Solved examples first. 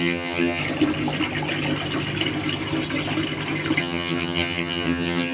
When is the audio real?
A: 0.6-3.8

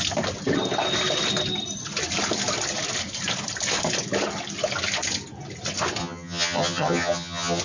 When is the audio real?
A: 0.0-6.0

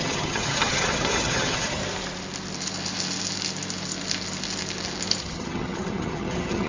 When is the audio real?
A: 1.8-5.2